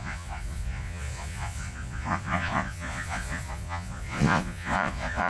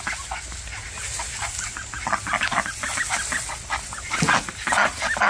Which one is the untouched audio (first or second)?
second